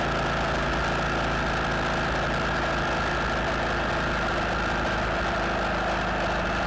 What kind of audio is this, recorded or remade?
recorded